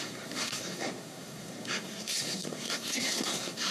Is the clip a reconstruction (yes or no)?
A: yes